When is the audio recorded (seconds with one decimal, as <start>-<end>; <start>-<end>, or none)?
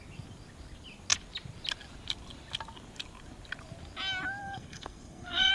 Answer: 0.0-4.4